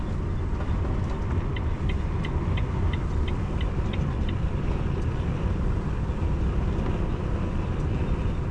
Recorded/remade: recorded